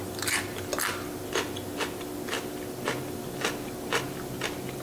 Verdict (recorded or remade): recorded